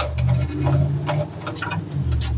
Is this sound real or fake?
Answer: real